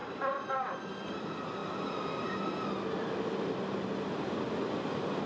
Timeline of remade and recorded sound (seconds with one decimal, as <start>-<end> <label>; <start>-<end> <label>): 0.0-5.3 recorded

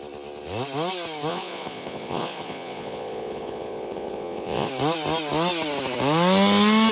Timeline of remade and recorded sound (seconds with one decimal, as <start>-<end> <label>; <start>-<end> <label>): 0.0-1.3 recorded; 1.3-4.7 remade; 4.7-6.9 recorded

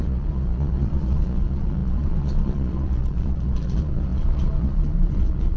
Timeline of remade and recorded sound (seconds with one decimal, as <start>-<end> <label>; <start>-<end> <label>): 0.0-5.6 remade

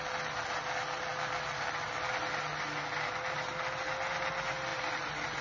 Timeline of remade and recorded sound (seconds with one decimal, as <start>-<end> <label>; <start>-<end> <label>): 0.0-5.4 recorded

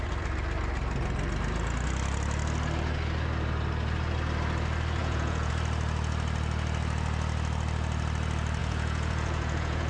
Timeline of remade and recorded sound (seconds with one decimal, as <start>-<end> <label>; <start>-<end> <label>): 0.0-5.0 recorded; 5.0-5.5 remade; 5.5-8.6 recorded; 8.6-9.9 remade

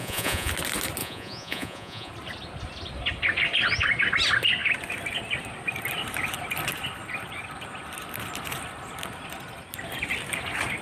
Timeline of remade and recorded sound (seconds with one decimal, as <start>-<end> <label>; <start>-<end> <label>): 0.0-0.5 remade; 0.5-1.0 recorded; 1.0-2.1 remade; 2.1-10.8 recorded